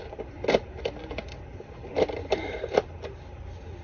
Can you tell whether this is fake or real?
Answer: real